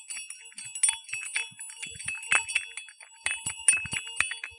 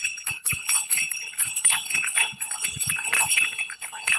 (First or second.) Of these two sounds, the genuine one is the first